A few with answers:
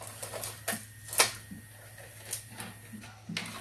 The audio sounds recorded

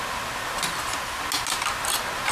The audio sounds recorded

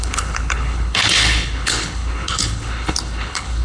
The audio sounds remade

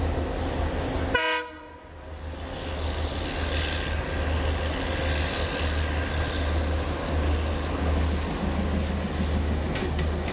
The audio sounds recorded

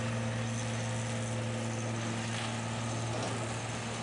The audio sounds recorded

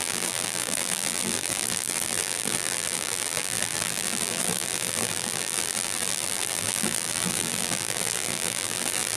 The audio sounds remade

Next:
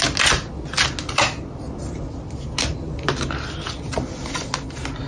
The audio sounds recorded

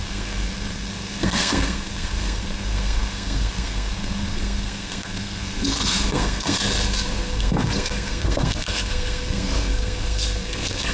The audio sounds remade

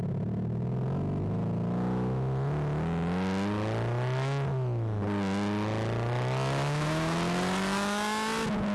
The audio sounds recorded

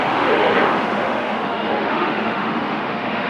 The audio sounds remade